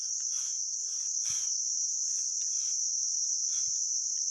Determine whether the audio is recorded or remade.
remade